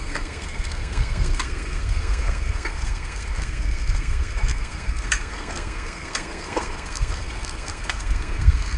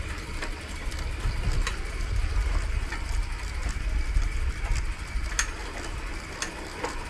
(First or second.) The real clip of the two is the second